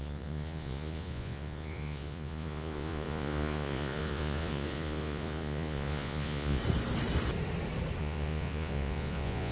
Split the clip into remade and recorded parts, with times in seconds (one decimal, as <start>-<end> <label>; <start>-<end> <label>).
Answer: 0.0-6.6 remade; 6.6-8.0 recorded; 8.0-9.5 remade